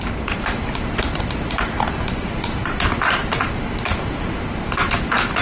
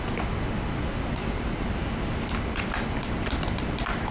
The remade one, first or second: first